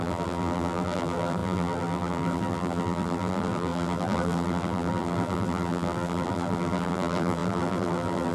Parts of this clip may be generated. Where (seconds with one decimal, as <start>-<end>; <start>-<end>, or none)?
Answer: 0.0-8.3